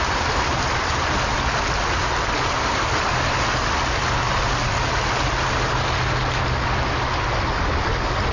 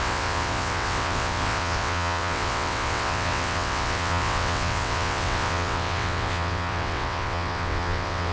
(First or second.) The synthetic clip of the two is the second